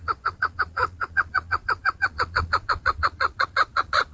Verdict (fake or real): fake